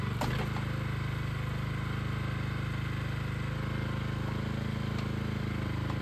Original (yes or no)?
yes